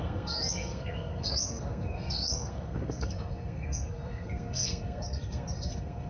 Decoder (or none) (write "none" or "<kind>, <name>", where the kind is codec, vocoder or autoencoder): codec, SNAC